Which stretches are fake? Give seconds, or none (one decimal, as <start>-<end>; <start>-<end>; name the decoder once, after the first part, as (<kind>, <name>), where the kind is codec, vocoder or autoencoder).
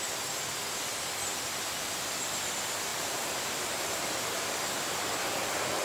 2.9-4.5 (vocoder, BigVGAN v2)